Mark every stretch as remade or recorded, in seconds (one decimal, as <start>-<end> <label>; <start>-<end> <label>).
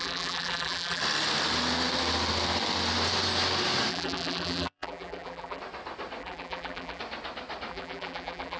0.0-1.0 remade; 1.0-3.9 recorded; 3.9-5.6 remade; 5.6-6.2 recorded; 6.2-7.0 remade; 7.0-7.7 recorded; 7.7-8.6 remade